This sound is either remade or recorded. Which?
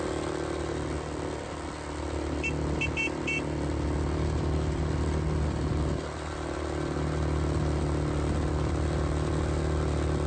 recorded